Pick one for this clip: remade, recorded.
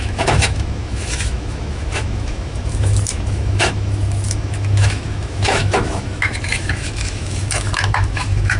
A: remade